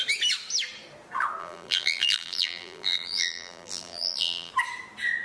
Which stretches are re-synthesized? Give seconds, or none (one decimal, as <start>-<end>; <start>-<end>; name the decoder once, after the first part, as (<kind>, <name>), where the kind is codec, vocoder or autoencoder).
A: 1.4-4.5 (vocoder, BigVGAN v2)